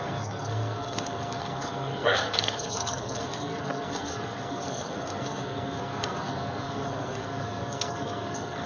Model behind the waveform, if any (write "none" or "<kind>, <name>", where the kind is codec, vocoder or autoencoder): codec, SNAC